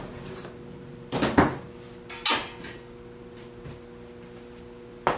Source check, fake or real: real